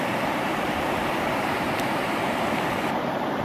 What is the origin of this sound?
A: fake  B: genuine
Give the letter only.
A